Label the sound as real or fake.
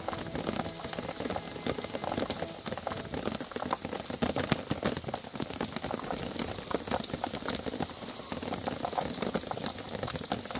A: real